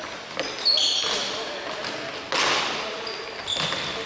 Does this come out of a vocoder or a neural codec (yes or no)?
no